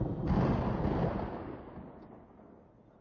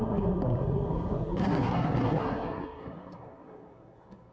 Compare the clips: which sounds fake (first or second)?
second